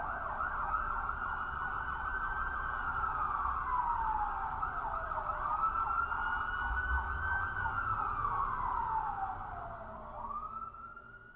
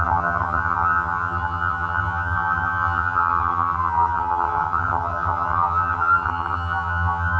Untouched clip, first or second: first